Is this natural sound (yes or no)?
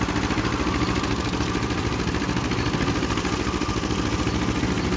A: yes